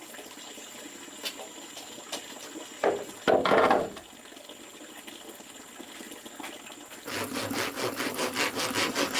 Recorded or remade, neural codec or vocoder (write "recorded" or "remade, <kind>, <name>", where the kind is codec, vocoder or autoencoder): recorded